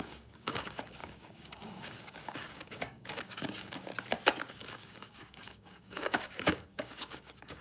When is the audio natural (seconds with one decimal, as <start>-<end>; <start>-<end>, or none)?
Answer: 3.9-4.5